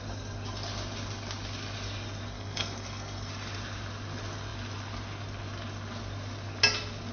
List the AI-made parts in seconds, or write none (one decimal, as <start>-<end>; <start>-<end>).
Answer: 2.3-3.3